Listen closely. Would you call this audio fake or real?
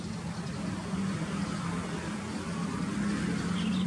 real